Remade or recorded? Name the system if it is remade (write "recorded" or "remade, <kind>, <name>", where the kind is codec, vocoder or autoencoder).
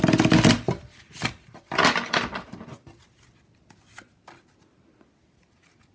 recorded